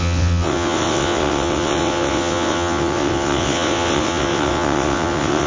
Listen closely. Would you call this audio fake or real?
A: fake